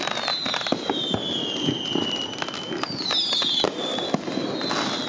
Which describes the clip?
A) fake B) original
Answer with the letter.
B